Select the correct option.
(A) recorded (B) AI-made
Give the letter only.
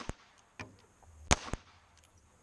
A